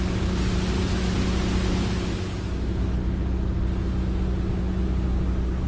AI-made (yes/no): no